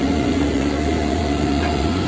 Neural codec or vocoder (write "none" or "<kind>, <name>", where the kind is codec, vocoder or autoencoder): vocoder, Vocos